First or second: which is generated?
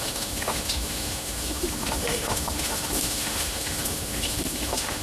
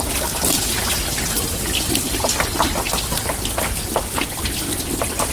first